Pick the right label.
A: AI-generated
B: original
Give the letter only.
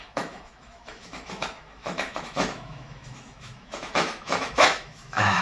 A